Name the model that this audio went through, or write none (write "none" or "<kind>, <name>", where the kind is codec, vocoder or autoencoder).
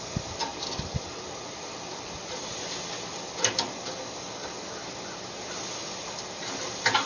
none